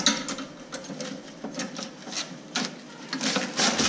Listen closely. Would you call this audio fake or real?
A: real